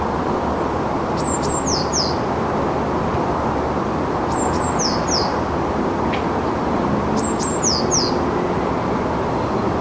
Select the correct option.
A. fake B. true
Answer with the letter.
A